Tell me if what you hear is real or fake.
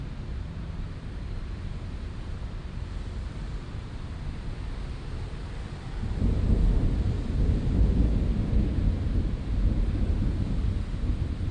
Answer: real